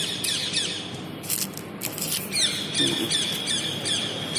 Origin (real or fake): fake